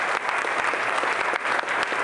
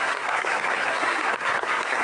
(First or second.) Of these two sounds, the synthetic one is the second